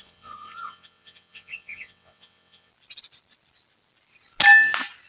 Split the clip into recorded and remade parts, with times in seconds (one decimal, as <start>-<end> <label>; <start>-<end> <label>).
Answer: 0.0-2.7 remade; 2.7-5.1 recorded